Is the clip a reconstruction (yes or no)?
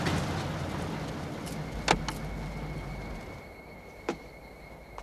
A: no